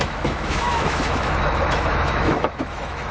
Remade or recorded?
remade